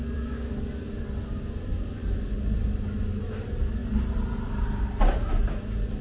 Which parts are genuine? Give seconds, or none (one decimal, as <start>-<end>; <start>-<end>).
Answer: 0.0-6.0